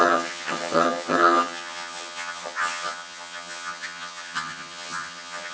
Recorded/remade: remade